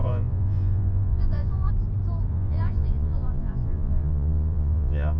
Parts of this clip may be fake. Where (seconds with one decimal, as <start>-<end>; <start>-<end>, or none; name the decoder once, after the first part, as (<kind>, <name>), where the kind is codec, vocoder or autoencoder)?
0.0-1.7 (vocoder, Vocos); 2.3-5.2